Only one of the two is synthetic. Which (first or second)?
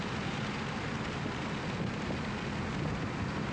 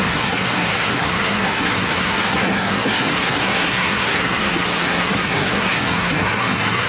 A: second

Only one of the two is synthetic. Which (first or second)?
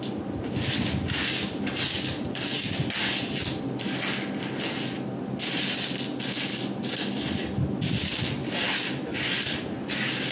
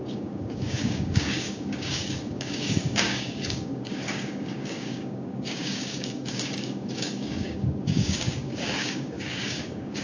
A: second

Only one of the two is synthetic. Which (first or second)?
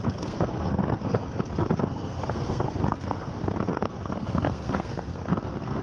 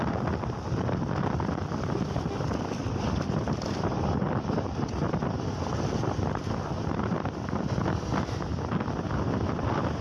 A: first